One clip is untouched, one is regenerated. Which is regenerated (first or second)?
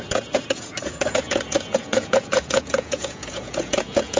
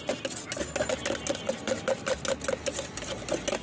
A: first